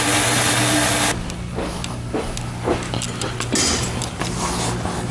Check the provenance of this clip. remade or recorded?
recorded